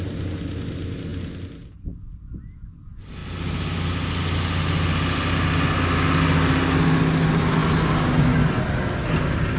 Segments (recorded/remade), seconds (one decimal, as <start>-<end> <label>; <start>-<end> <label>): 0.0-9.6 recorded

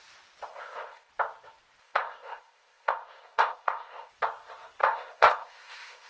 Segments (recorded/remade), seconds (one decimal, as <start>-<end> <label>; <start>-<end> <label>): 0.0-0.5 recorded; 0.5-1.1 remade; 1.1-1.8 recorded; 1.8-4.1 remade; 4.1-4.8 recorded; 4.8-6.1 remade

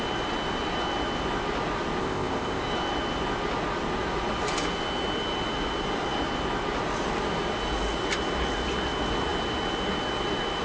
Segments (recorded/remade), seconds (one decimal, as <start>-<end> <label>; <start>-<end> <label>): 0.0-2.0 recorded; 2.0-2.6 remade; 2.6-10.6 recorded

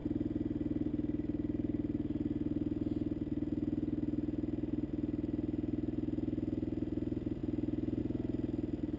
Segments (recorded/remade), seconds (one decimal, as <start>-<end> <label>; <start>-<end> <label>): 0.0-9.0 recorded

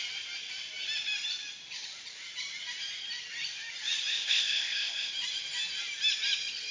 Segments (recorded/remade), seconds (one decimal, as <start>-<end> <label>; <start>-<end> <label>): 0.0-4.1 recorded; 4.1-5.1 remade; 5.1-6.7 recorded

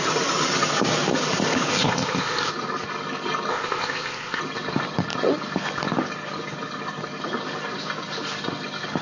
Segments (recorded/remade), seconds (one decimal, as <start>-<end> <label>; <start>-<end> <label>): 0.0-1.7 recorded; 1.7-2.5 remade; 2.5-3.5 recorded; 3.5-4.4 remade; 4.4-9.0 recorded

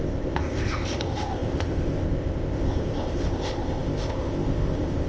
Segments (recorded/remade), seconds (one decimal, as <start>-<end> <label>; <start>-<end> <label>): 0.0-5.1 remade